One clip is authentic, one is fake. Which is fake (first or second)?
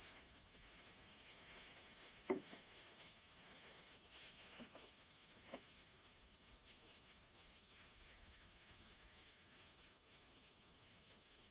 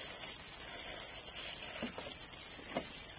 first